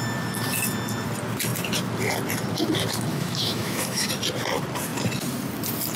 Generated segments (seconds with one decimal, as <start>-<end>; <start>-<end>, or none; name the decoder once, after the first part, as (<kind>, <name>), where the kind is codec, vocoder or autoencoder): 3.1-4.1 (autoencoder, DAC-VAE)